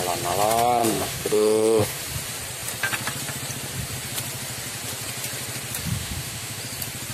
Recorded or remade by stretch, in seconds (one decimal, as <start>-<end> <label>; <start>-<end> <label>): 0.0-0.8 recorded; 0.8-2.0 remade; 2.0-5.9 recorded; 5.9-6.6 remade; 6.6-7.1 recorded